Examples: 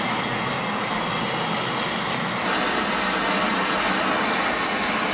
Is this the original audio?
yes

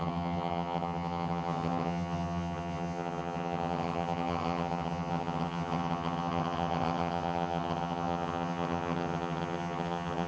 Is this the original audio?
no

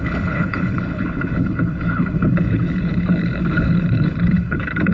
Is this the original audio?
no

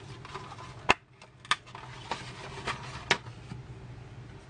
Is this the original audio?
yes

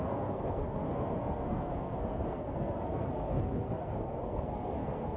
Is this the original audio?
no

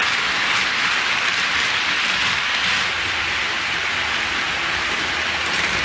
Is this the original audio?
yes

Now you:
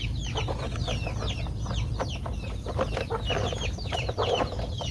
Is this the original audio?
yes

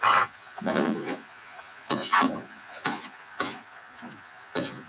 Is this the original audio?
no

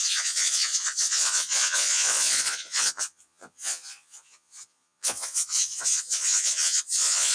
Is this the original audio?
no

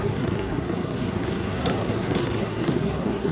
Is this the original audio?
no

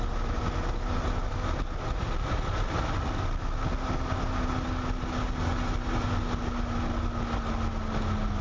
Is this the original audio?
yes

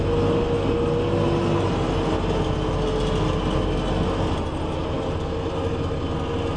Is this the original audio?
yes